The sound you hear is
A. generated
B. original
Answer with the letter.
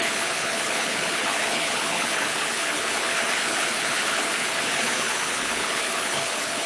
A